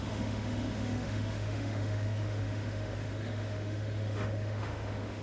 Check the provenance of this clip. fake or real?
fake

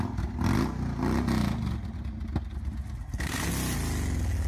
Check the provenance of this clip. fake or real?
real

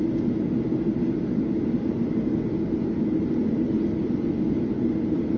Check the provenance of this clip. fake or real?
real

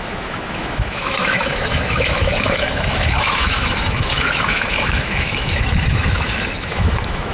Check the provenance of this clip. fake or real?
fake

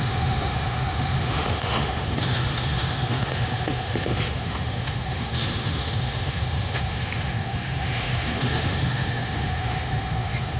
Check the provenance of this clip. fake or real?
fake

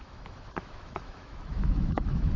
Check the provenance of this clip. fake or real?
fake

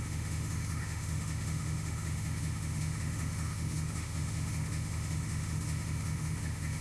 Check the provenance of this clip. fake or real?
fake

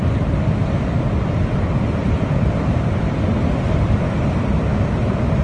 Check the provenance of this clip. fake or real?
real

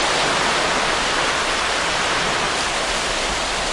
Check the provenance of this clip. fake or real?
real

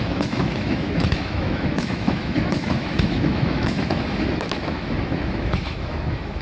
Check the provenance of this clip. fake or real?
fake